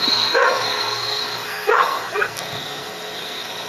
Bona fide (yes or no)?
no